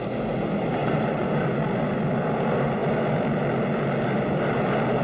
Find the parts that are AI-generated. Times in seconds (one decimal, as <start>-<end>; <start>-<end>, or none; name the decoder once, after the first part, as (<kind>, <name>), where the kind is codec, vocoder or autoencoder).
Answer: 0.8-1.3 (vocoder, Vocos)